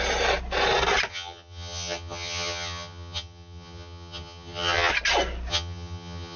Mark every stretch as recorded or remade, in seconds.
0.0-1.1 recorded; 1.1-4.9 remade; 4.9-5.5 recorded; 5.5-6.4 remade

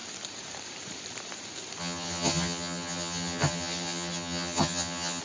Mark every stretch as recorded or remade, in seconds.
0.0-1.8 recorded; 1.8-5.2 remade

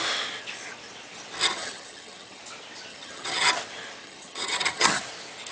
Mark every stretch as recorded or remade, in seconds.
0.0-1.5 recorded; 1.5-2.4 remade; 2.4-2.9 recorded; 2.9-3.5 remade; 3.5-4.0 recorded; 4.0-5.0 remade; 5.0-5.5 recorded